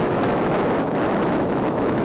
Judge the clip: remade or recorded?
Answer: remade